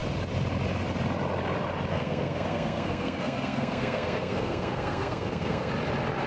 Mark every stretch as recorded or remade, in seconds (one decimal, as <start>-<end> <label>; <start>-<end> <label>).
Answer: 0.0-1.9 recorded; 1.9-5.7 remade; 5.7-6.3 recorded